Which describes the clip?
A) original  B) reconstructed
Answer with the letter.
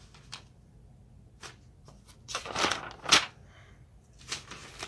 A